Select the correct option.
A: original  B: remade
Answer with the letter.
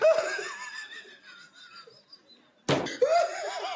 A